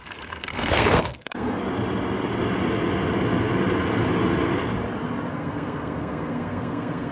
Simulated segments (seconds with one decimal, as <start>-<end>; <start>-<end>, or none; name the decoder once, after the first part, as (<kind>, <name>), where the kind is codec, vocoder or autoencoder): 0.0-1.6 (codec, SNAC); 5.3-7.1